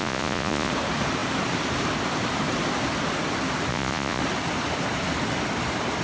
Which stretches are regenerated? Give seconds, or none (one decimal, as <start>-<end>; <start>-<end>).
0.0-0.7; 3.7-4.2